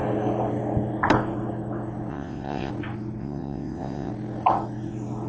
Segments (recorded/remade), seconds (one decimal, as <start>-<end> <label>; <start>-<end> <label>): 0.0-2.1 recorded; 2.1-2.7 remade; 2.7-3.2 recorded; 3.2-4.1 remade; 4.1-5.3 recorded